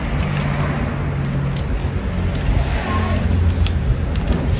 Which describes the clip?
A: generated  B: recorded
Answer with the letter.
B